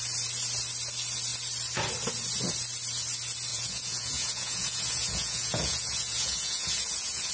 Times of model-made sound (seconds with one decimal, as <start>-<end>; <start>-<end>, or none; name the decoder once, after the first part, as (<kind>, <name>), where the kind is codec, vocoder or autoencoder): 3.5-7.3 (vocoder, Vocos)